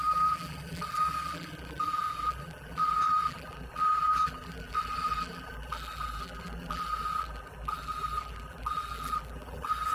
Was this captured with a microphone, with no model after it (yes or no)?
no